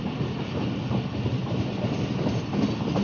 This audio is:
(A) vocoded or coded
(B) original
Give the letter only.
B